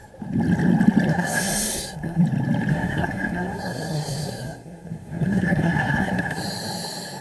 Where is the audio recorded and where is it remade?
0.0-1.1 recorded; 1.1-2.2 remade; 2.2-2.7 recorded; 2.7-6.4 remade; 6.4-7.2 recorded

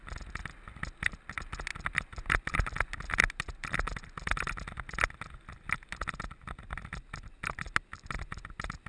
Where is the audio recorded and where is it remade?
0.0-8.9 recorded

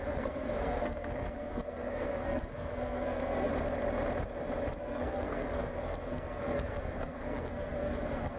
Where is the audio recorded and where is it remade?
0.0-3.5 remade; 3.5-4.8 recorded; 4.8-8.4 remade

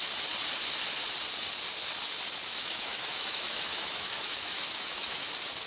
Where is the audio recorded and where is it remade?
0.0-2.5 recorded; 2.5-5.3 remade; 5.3-5.7 recorded

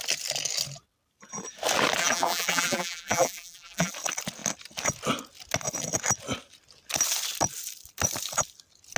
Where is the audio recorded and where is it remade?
0.0-2.0 recorded; 2.0-3.9 remade; 3.9-9.0 recorded

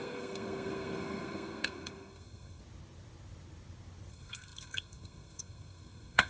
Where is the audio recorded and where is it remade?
0.0-2.6 remade; 2.6-4.1 recorded; 4.1-6.3 remade